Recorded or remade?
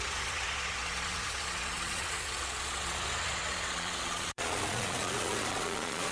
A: remade